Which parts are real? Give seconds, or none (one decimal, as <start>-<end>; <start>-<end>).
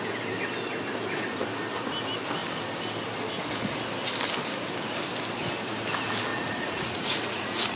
0.0-6.3